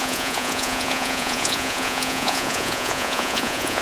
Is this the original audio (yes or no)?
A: no